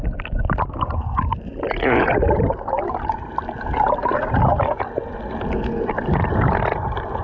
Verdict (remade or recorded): recorded